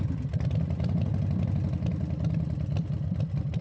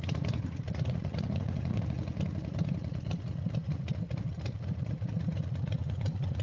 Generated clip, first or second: second